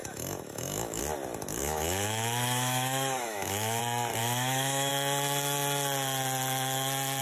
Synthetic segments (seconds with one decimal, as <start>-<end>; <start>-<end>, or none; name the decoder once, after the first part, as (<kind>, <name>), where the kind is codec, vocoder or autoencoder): 0.0-1.0 (autoencoder, DAC-VAE); 1.6-3.8; 4.2-4.9